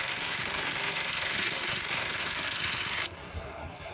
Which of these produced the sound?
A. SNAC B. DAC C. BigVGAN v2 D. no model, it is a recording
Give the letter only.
A